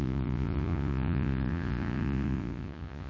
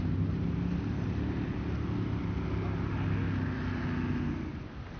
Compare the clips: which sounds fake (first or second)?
first